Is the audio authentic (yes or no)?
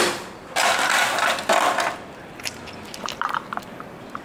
no